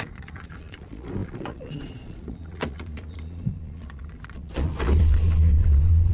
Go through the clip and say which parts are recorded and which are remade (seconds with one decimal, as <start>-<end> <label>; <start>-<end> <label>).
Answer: 0.0-6.1 remade